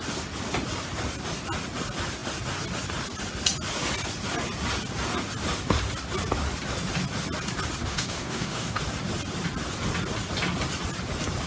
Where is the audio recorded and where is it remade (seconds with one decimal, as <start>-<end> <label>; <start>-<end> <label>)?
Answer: 0.0-7.8 recorded; 7.8-8.8 remade; 8.8-11.5 recorded